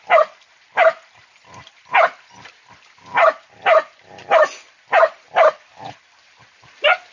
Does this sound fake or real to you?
real